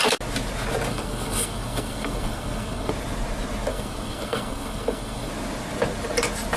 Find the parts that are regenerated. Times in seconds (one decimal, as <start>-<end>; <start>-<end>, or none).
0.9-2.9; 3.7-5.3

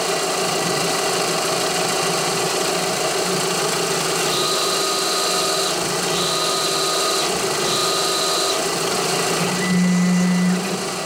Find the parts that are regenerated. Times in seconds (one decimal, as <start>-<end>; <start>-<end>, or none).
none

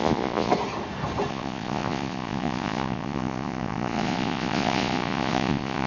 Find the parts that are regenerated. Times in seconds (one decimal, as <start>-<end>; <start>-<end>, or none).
0.0-0.5; 1.3-5.9

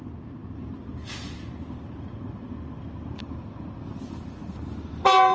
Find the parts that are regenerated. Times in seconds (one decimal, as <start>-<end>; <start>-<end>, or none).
none

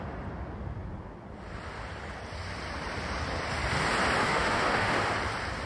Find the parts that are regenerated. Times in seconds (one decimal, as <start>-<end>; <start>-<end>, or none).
4.2-5.1

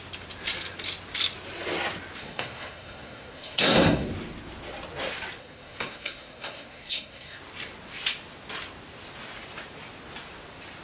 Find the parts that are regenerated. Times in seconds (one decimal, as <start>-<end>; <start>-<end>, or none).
2.2-4.1; 5.4-7.4

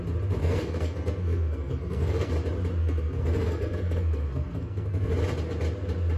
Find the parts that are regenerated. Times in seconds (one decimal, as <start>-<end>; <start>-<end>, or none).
0.4-2.3; 2.8-5.1

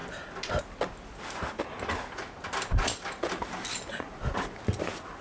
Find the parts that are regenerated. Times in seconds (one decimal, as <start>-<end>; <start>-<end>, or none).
none